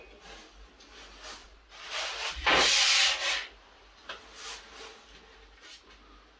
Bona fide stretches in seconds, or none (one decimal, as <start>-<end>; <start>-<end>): 0.0-6.4